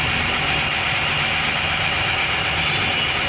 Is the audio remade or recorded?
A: recorded